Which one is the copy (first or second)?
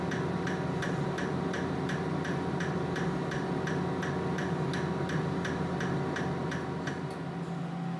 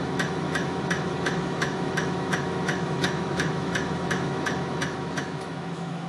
second